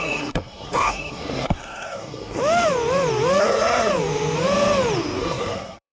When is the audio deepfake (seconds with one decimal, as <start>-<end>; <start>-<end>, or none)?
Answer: 0.0-2.4; 3.4-3.9; 5.2-5.9